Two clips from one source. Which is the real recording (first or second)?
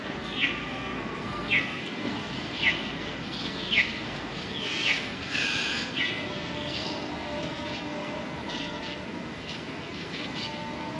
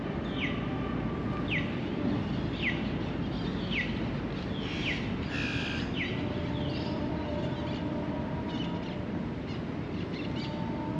second